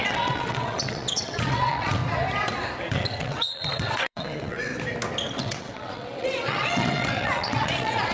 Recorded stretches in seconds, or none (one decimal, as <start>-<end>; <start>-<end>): 2.0-2.9; 4.7-5.4